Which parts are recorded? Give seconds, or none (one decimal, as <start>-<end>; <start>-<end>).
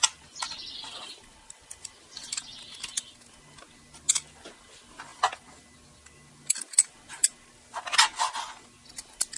0.0-9.4